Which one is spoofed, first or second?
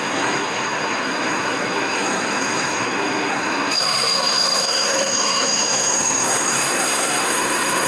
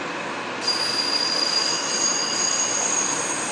first